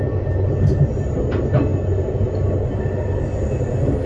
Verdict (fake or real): real